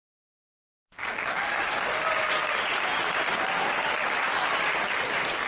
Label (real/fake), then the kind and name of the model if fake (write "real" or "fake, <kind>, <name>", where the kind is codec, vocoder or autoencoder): fake, vocoder, BigVGAN v2